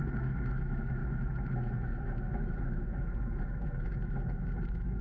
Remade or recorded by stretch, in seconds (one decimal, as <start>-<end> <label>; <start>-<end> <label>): 0.0-5.0 remade